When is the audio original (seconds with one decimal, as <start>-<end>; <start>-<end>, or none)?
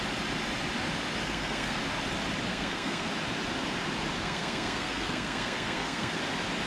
0.0-1.2; 1.8-2.5; 3.1-4.2; 6.2-6.7